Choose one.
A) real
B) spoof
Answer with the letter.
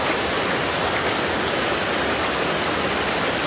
A